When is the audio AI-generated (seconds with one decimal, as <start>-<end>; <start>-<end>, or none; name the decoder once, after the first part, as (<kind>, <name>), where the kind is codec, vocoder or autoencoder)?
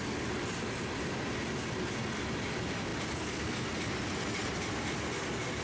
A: none